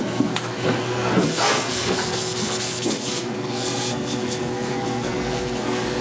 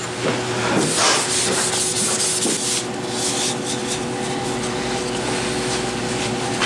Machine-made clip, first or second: first